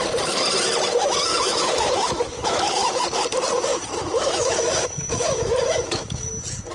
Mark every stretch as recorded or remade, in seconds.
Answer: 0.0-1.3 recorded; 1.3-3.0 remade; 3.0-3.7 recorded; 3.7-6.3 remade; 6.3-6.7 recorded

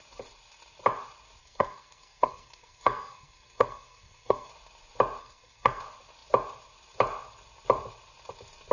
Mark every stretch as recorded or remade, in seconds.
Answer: 0.0-1.4 recorded; 1.4-4.5 remade; 4.5-5.2 recorded; 5.2-5.8 remade; 5.8-8.7 recorded

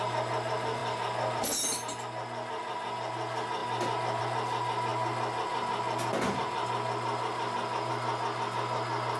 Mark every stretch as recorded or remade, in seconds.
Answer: 0.0-9.2 recorded

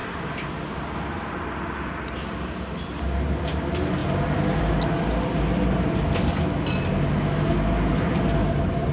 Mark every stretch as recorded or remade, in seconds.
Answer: 0.0-8.9 recorded

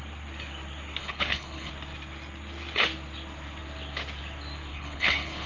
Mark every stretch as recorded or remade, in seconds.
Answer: 0.0-1.0 recorded; 1.0-1.7 remade; 1.7-4.7 recorded; 4.7-5.5 remade

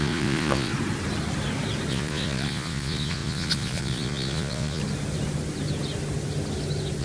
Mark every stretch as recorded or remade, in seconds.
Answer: 0.0-0.7 remade; 0.7-1.9 recorded; 1.9-4.8 remade; 4.8-7.0 recorded

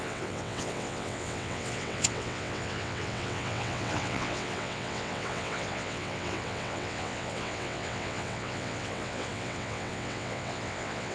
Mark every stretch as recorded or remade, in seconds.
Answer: 0.0-11.1 remade

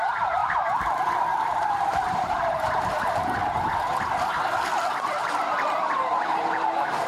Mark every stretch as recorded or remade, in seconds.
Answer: 0.0-3.4 remade; 3.4-5.1 recorded; 5.1-7.1 remade